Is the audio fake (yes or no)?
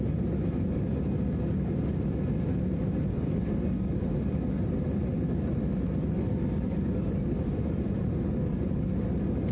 no